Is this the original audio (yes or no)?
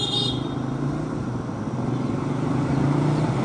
yes